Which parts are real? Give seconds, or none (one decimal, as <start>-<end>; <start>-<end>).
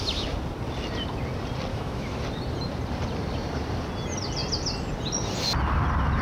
0.0-1.7; 2.2-6.2